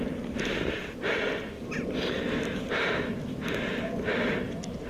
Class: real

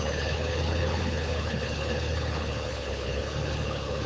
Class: fake